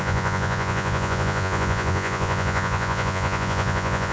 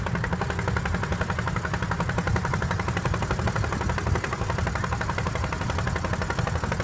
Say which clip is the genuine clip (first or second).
second